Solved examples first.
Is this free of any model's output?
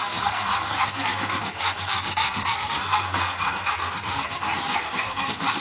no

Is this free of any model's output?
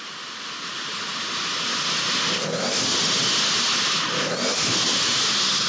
yes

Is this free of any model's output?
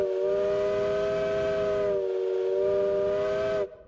yes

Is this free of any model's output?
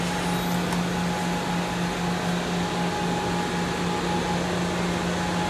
yes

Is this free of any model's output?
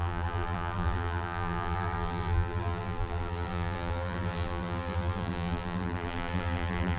no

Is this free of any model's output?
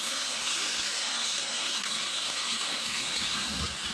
no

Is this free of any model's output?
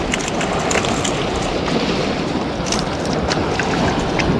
yes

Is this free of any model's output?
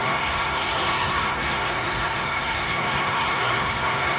no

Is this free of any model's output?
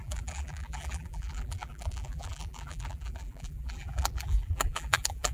no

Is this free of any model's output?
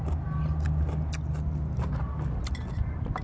yes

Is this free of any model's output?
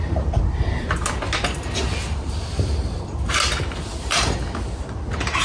yes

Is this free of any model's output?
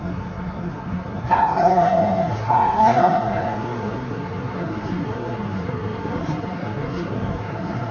no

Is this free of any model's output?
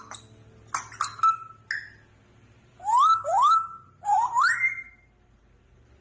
yes